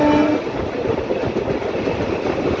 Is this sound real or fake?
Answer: real